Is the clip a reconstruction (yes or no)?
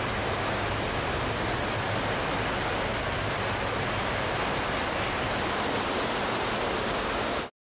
no